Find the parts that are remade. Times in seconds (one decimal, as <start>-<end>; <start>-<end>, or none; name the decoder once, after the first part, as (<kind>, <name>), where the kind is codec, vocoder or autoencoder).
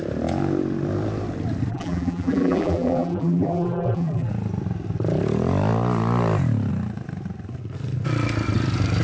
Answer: 1.7-4.3 (vocoder, BigVGAN v2)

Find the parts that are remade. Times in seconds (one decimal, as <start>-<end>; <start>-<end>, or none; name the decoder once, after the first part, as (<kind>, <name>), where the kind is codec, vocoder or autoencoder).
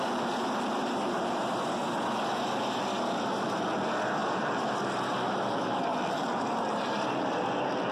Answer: 0.8-1.4 (vocoder, BigVGAN v2)